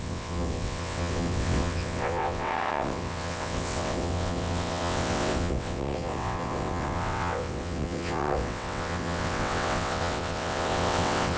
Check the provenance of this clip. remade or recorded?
remade